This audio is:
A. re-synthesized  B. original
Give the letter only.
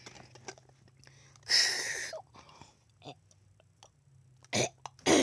B